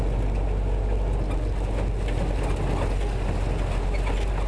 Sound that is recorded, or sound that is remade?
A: recorded